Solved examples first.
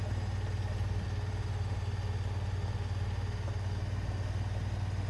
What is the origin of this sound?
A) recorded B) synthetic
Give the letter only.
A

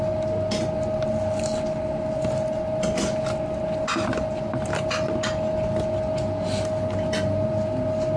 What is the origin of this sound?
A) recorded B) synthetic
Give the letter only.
A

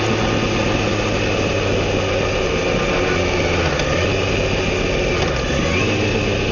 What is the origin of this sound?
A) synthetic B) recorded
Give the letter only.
B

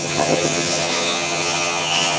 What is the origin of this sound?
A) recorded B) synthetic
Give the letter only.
B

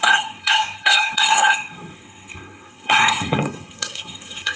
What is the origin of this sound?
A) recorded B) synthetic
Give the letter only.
B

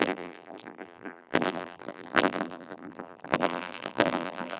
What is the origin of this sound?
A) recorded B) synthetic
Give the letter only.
B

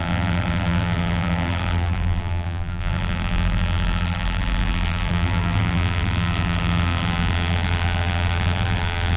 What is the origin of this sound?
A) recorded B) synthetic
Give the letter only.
B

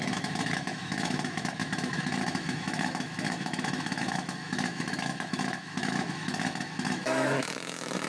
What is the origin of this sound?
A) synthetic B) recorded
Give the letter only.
A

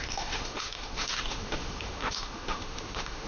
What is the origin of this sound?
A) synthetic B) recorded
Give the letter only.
A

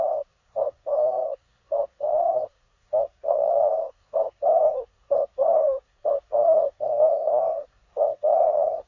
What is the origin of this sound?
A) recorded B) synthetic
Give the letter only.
B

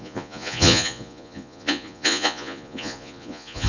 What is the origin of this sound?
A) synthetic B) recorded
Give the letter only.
A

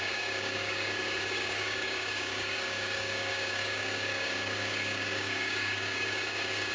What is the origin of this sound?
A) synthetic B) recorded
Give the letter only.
A